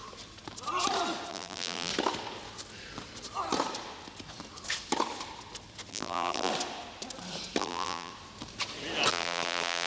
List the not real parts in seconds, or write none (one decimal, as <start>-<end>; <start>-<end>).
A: 1.3-1.9; 5.9-6.5; 7.6-8.1; 9.1-9.9